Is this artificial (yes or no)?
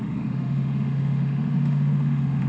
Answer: yes